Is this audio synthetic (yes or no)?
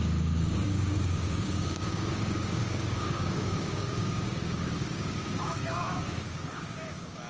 yes